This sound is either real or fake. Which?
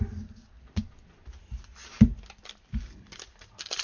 real